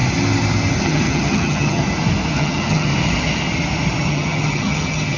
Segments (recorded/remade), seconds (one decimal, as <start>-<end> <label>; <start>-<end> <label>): 0.0-0.8 recorded; 0.8-1.8 remade; 1.8-2.3 recorded; 2.3-2.9 remade; 2.9-4.1 recorded; 4.1-5.2 remade